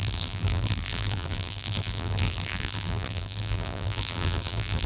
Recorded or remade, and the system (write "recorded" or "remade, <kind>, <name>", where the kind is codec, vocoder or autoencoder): remade, vocoder, BigVGAN v2